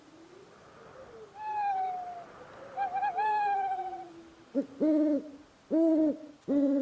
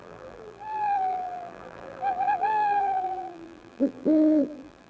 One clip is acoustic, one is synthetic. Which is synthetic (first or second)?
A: second